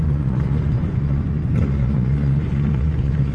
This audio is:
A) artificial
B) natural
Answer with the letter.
A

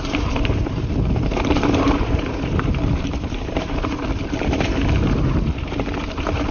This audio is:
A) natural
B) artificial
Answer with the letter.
B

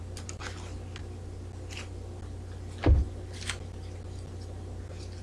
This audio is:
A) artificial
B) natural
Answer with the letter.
B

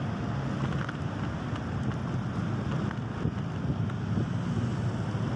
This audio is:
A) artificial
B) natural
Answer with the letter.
B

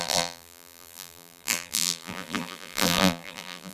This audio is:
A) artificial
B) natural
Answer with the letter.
A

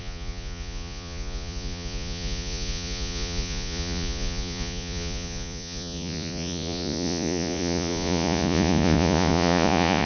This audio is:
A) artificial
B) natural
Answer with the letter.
A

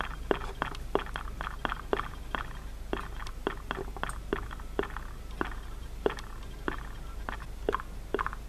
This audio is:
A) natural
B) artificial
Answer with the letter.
A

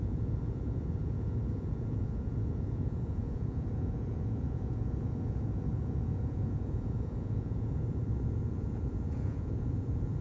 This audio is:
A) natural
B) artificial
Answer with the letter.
B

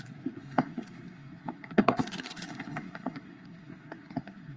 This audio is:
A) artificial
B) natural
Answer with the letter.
A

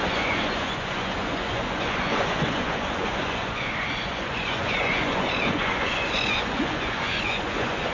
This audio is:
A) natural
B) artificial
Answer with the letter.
B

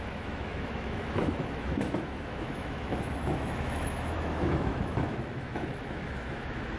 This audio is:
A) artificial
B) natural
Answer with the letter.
A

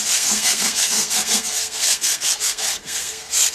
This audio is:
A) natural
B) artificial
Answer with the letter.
B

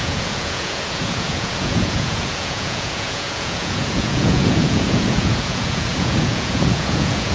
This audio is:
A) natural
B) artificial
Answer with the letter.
B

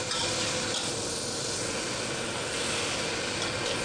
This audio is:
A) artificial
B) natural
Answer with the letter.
B